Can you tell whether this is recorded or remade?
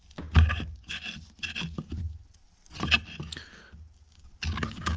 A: recorded